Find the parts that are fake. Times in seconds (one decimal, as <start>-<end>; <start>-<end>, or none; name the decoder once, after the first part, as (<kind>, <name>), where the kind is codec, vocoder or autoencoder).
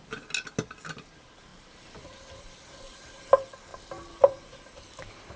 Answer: 1.5-3.1 (vocoder, BigVGAN v2)